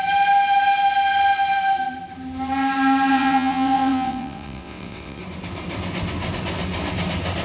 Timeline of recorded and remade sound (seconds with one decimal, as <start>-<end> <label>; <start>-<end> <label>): 0.0-3.1 recorded; 3.1-5.2 remade; 5.2-7.4 recorded